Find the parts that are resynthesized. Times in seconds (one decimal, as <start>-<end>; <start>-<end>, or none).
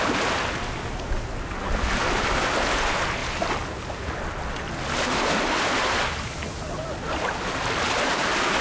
none